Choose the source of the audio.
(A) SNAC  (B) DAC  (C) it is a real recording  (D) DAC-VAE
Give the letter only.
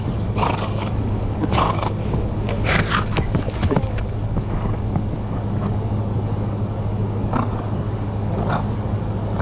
B